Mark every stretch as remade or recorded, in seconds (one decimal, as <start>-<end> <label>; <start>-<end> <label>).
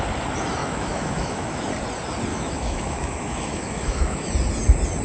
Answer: 0.0-0.6 recorded; 0.6-1.7 remade; 1.7-2.3 recorded; 2.3-4.3 remade; 4.3-5.0 recorded